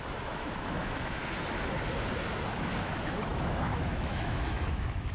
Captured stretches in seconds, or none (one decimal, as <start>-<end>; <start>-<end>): 1.2-2.7